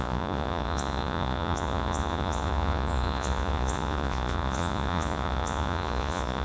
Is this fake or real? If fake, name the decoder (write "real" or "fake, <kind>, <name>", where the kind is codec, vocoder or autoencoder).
fake, vocoder, Vocos